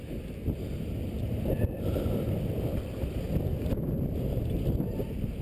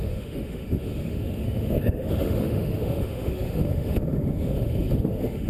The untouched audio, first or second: first